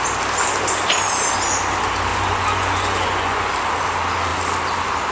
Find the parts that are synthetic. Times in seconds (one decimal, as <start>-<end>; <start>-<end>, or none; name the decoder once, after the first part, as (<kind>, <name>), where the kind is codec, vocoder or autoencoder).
2.1-3.5 (vocoder, Vocos)